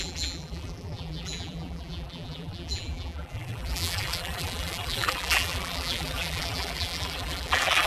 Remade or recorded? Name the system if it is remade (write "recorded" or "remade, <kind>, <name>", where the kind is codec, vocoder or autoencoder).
remade, vocoder, BigVGAN v2